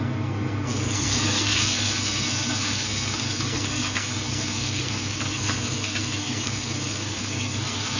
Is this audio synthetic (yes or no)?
yes